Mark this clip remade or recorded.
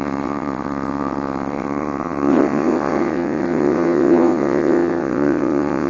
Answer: remade